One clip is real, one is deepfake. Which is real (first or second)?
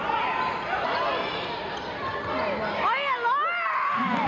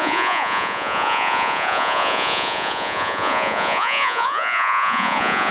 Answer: first